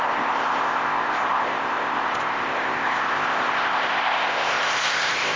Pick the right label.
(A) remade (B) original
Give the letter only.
A